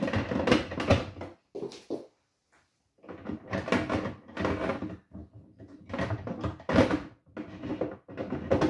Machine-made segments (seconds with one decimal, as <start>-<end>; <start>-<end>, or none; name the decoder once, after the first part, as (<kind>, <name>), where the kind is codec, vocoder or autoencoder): none